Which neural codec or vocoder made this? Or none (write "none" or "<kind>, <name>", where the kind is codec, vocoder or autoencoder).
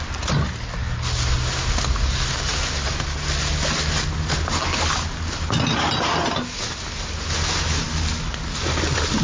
none